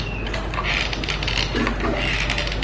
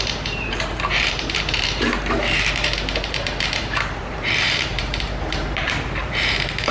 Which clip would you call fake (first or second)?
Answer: second